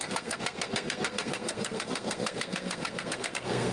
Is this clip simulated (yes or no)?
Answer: yes